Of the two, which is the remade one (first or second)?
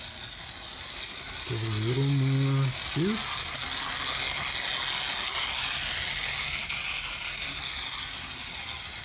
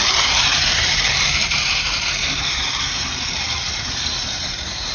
second